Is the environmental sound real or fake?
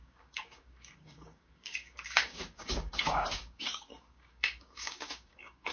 fake